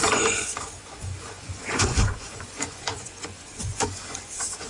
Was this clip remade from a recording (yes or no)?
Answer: yes